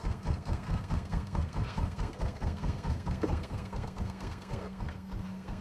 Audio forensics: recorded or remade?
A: remade